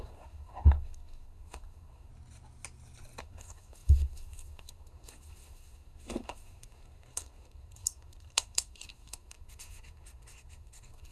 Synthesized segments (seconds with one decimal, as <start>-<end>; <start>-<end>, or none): 0.0-2.1; 3.2-11.1